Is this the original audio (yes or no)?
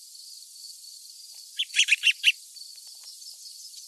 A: no